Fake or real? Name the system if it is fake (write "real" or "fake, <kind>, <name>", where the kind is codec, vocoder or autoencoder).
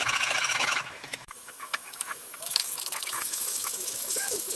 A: fake, autoencoder, DAC-VAE